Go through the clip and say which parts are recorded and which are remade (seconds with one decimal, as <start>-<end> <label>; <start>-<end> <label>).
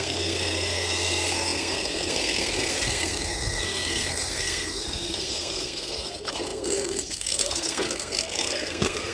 0.0-9.1 remade